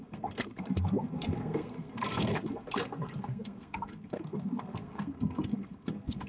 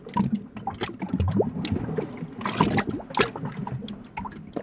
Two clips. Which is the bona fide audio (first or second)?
second